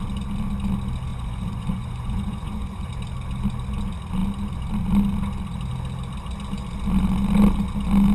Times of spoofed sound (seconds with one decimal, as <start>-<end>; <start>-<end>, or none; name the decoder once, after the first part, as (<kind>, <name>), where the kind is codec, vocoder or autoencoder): 1.1-2.9 (vocoder, Vocos)